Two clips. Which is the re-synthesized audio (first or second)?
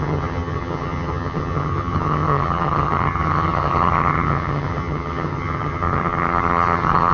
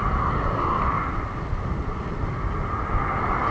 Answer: first